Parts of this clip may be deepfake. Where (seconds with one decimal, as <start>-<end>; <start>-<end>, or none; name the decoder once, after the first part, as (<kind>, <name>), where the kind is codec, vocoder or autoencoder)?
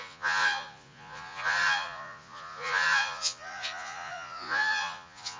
0.0-5.4 (vocoder, Vocos)